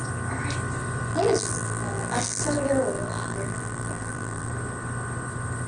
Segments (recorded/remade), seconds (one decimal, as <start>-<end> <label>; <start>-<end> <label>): 0.0-1.1 recorded; 1.1-4.5 remade; 4.5-5.7 recorded